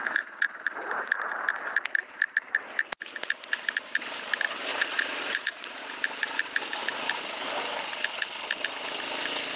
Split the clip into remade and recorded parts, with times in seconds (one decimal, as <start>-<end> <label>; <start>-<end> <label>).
0.0-1.3 remade; 1.3-4.7 recorded; 4.7-5.8 remade; 5.8-9.6 recorded